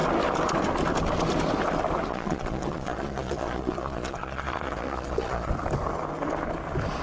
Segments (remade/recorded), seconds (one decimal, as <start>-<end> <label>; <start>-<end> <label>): 0.0-2.1 recorded; 2.1-5.5 remade; 5.5-7.0 recorded